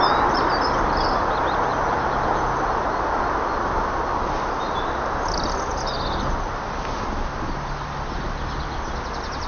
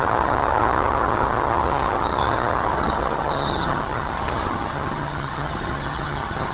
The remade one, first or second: second